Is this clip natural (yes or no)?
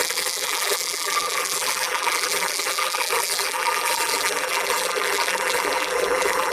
no